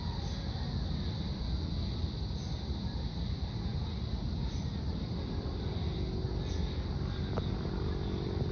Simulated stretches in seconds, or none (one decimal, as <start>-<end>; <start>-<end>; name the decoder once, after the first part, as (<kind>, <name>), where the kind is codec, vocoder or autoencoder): none